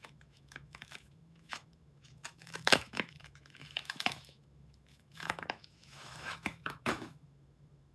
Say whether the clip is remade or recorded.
remade